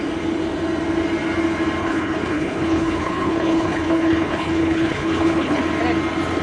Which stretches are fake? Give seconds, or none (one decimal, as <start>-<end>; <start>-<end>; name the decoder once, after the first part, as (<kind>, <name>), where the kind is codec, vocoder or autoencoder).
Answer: 1.8-5.6 (codec, HILCodec)